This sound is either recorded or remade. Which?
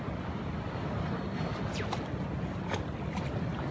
recorded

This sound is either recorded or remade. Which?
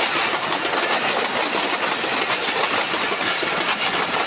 recorded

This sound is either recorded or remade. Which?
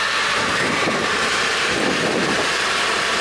remade